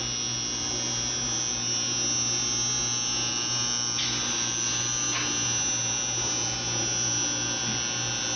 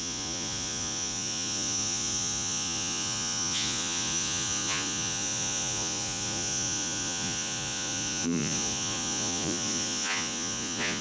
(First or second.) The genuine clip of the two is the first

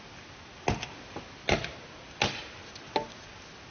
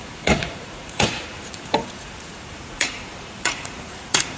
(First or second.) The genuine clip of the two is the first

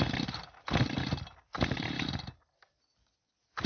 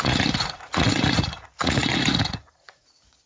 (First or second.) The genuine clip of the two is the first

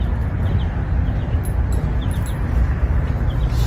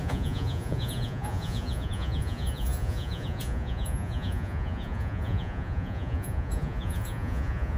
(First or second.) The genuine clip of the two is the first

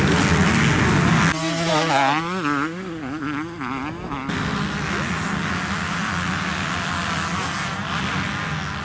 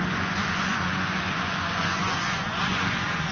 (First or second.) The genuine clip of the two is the first